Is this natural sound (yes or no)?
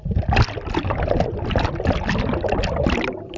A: yes